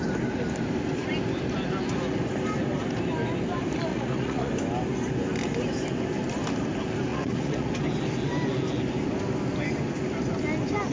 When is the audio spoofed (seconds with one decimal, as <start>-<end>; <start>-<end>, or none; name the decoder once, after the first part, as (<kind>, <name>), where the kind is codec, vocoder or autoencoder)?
3.9-4.5 (vocoder, Vocos); 7.1-7.7